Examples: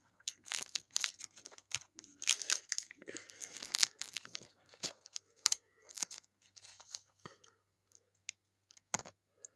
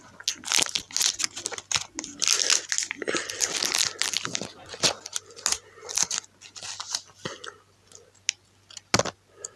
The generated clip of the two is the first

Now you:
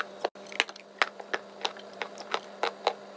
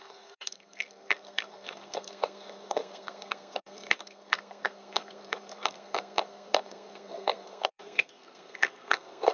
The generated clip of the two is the second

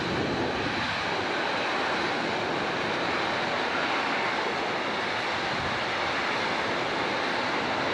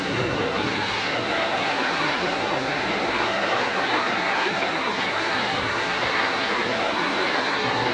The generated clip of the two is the second